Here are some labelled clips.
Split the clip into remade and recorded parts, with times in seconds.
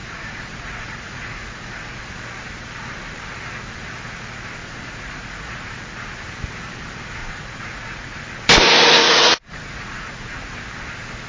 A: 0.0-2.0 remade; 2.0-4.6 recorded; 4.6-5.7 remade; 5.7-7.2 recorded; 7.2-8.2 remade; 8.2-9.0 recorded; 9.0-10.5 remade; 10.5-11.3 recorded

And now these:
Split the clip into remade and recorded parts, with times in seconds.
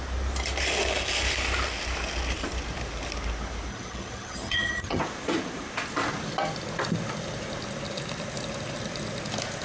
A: 0.0-3.7 recorded; 3.7-5.0 remade; 5.0-9.6 recorded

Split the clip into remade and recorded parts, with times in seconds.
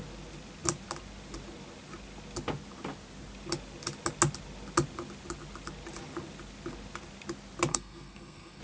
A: 0.0-7.7 recorded; 7.7-8.6 remade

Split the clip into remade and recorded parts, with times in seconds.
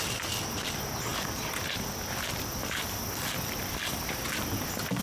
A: 0.0-5.0 recorded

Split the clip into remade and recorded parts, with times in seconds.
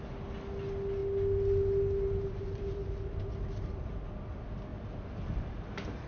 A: 0.0-4.7 recorded; 4.7-5.5 remade; 5.5-6.1 recorded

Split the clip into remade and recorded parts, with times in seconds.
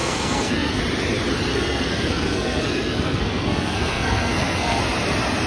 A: 0.0-0.8 remade; 0.8-1.5 recorded; 1.5-4.8 remade; 4.8-5.5 recorded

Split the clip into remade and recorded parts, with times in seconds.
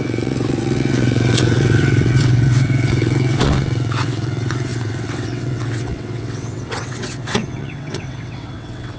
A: 0.0-9.0 remade